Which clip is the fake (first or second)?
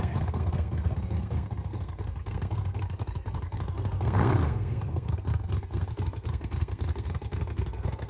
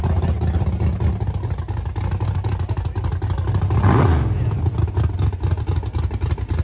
first